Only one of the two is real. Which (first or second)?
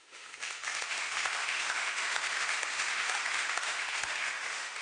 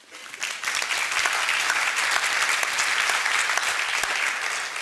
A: second